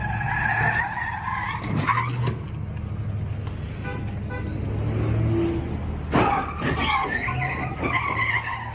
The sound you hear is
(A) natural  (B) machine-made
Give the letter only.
A